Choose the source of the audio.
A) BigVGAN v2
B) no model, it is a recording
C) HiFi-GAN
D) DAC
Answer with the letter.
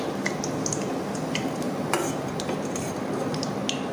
B